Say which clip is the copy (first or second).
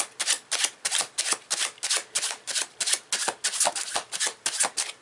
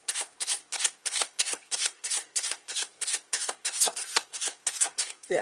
second